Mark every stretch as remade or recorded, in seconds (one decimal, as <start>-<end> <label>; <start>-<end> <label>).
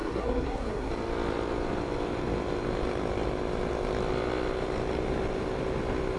0.0-0.9 remade; 0.9-6.2 recorded